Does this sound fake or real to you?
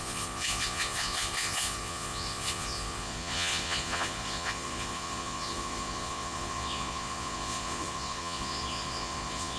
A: fake